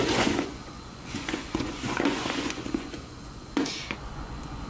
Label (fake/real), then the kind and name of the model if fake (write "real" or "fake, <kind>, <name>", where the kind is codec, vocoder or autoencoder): fake, vocoder, Vocos